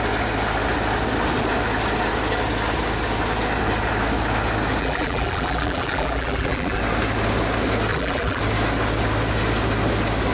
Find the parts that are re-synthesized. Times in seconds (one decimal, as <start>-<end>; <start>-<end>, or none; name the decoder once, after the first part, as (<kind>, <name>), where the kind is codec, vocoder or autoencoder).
4.8-6.8 (vocoder, BigVGAN v2); 7.9-8.4